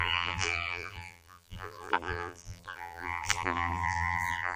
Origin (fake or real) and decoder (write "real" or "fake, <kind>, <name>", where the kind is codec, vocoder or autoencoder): fake, vocoder, BigVGAN v2